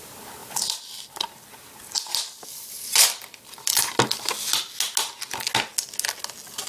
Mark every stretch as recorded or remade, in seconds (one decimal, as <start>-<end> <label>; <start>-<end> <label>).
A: 0.0-0.4 recorded; 0.4-4.3 remade; 4.3-6.7 recorded